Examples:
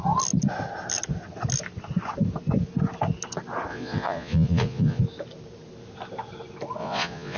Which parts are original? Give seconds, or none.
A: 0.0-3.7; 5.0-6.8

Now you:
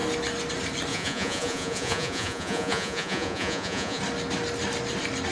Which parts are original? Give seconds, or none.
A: 0.0-0.9; 4.0-5.3

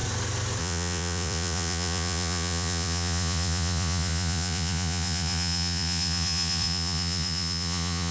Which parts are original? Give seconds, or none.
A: 0.0-0.6

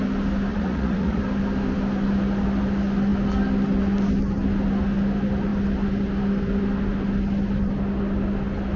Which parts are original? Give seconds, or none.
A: 0.0-0.5; 1.2-8.8